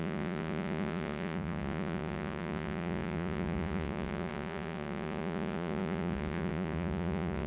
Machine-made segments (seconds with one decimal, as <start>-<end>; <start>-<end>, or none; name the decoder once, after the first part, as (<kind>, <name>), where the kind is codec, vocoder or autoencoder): 0.0-7.5 (vocoder, Vocos)

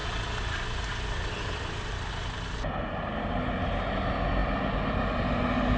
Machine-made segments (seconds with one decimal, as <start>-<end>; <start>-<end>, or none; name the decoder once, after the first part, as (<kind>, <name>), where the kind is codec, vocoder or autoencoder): none

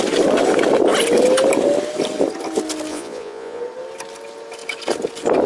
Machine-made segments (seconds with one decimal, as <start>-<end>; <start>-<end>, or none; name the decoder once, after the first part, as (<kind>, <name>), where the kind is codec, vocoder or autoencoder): 2.9-3.6 (vocoder, Vocos)

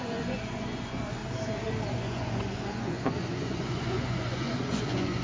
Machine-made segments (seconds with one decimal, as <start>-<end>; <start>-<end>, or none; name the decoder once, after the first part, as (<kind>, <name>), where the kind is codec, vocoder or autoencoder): 0.0-1.2 (vocoder, Vocos); 1.9-5.2

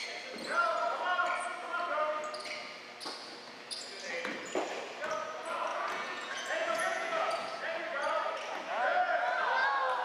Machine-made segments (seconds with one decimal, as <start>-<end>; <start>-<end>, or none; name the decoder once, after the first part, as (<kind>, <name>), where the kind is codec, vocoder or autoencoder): 5.7-7.6 (vocoder, Vocos); 8.7-9.2

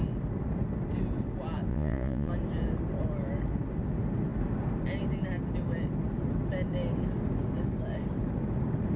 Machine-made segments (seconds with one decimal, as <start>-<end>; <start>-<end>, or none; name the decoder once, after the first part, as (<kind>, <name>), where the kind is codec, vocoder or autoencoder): 1.7-2.3 (vocoder, Vocos)

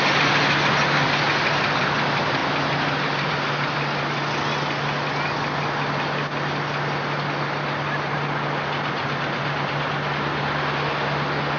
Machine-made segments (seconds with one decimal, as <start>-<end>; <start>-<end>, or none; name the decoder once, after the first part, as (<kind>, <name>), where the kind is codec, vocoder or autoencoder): none

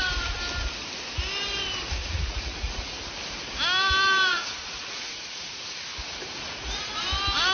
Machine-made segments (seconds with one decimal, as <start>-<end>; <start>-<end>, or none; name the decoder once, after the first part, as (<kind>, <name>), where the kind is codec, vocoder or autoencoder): 2.0-3.0 (vocoder, Vocos); 4.3-5.5; 6.0-6.9